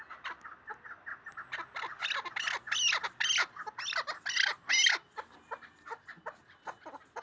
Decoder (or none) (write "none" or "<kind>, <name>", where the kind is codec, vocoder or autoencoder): none